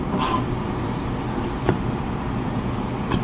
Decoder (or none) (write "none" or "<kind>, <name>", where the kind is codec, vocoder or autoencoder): vocoder, BigVGAN v2